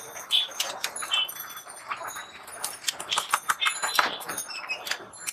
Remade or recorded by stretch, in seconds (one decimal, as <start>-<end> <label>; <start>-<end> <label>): 0.0-2.0 remade; 2.0-2.9 recorded; 2.9-5.3 remade